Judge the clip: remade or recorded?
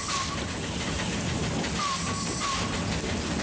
recorded